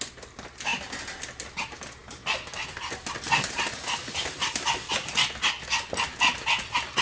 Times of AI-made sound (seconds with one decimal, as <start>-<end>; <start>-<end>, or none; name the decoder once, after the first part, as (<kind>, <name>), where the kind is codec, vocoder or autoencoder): none